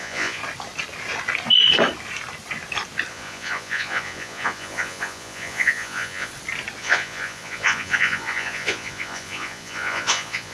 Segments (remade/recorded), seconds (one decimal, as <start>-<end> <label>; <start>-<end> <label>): 0.0-0.4 remade; 0.4-3.1 recorded; 3.1-6.3 remade; 6.3-6.8 recorded; 6.8-10.5 remade